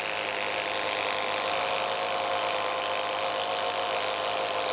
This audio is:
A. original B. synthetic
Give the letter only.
A